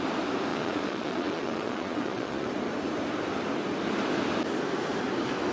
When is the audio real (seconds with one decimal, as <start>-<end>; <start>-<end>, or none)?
0.0-0.5; 2.5-5.5